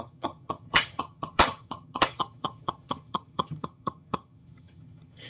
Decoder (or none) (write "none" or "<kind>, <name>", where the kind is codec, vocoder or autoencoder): vocoder, HiFi-GAN